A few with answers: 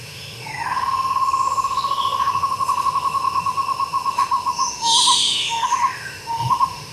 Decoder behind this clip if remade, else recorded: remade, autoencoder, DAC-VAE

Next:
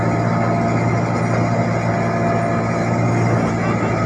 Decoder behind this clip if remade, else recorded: recorded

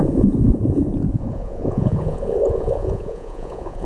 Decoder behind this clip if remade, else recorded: remade, vocoder, Vocos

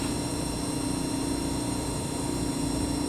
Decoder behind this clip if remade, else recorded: remade, vocoder, BigVGAN v2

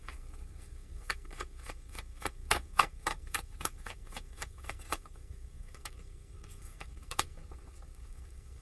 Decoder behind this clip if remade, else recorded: remade, codec, SNAC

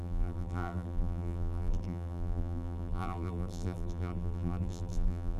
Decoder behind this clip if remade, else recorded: remade, vocoder, BigVGAN v2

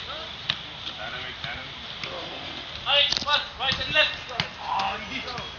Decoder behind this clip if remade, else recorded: recorded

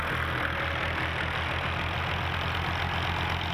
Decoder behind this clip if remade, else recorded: recorded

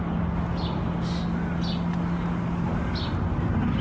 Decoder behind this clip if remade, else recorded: recorded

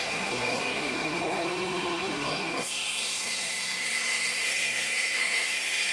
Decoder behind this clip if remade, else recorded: remade, codec, SNAC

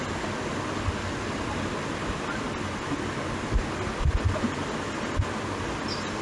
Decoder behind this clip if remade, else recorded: recorded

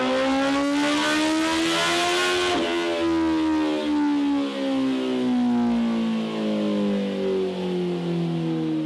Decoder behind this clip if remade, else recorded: recorded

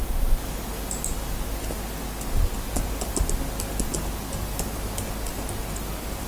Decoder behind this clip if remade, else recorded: recorded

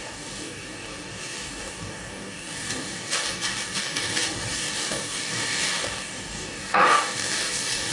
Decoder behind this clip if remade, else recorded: remade, codec, DAC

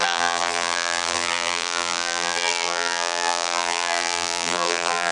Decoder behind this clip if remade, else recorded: remade, vocoder, BigVGAN v2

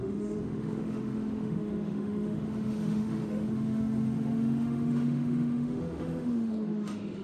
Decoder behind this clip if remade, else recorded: remade, autoencoder, DAC-VAE